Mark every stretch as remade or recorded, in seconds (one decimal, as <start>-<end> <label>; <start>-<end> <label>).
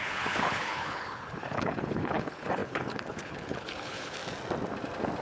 0.0-4.2 remade; 4.2-5.2 recorded